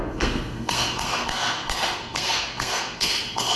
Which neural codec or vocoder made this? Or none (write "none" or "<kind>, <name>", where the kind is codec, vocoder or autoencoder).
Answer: codec, SNAC